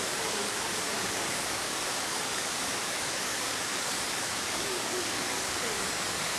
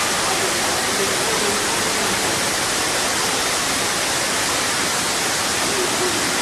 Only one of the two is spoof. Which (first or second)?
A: first